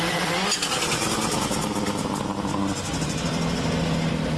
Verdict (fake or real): real